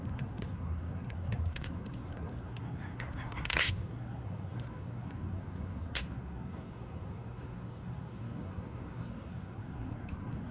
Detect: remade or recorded remade